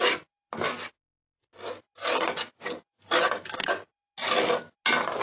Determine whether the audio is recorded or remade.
recorded